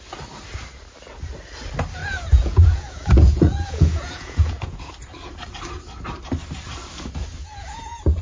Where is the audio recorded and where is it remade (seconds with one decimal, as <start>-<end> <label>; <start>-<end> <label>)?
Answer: 0.0-2.0 recorded; 2.0-4.9 remade; 4.9-7.4 recorded; 7.4-8.2 remade